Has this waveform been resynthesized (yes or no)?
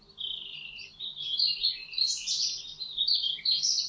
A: no